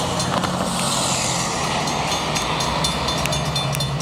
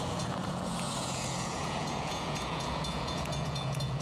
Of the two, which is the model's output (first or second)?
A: second